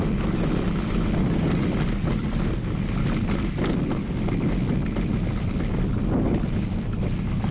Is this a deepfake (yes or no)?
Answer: no